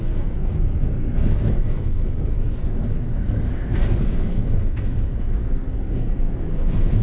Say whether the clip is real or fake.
fake